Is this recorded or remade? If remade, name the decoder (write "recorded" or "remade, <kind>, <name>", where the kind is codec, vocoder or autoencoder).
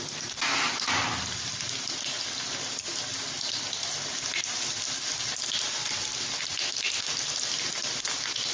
recorded